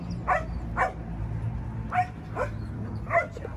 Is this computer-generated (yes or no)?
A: no